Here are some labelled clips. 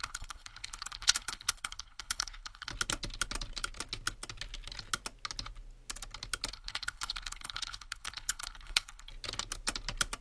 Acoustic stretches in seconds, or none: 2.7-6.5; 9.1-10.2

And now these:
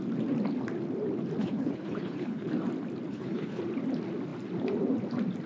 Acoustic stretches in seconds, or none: 0.0-1.4; 2.5-3.1; 3.6-5.5